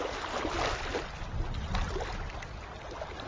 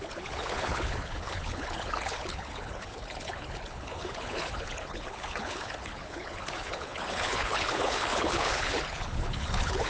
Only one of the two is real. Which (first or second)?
first